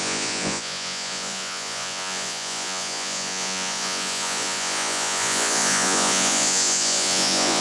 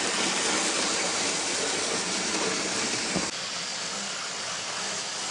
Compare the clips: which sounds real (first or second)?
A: second